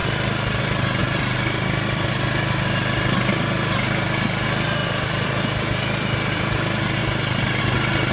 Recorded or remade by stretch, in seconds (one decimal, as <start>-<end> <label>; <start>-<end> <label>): 0.0-0.6 remade; 0.6-1.0 recorded; 1.0-2.1 remade; 2.1-4.8 recorded; 4.8-6.4 remade; 6.4-7.0 recorded; 7.0-7.6 remade; 7.6-8.1 recorded